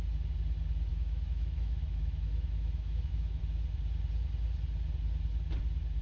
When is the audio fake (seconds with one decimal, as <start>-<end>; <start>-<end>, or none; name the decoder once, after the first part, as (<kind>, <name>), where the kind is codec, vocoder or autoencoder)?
0.9-3.4 (autoencoder, DAC-VAE)